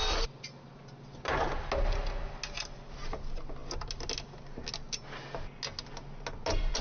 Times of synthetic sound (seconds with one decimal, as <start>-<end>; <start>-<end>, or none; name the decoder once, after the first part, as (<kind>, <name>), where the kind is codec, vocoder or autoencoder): none